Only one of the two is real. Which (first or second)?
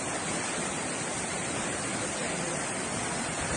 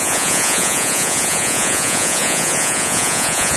first